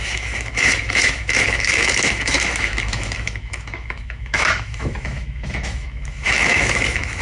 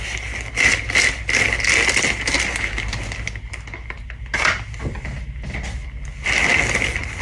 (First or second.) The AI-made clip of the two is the first